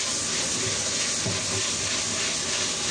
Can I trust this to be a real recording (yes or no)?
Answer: yes